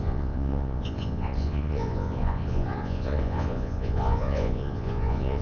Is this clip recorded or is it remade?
remade